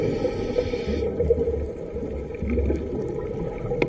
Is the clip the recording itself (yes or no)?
yes